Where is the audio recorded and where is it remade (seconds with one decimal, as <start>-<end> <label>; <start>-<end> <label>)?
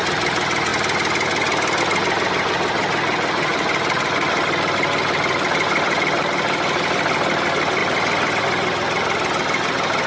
0.0-10.1 recorded